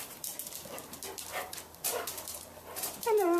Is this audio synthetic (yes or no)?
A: yes